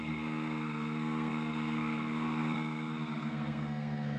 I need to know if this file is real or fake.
fake